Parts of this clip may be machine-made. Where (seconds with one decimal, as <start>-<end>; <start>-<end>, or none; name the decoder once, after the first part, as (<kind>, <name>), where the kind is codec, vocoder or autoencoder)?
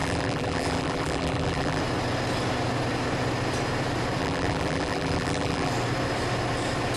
0.0-1.8 (vocoder, BigVGAN v2); 4.2-5.7